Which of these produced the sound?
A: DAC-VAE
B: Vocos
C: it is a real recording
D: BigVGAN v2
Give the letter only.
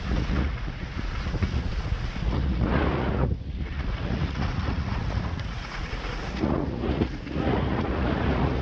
B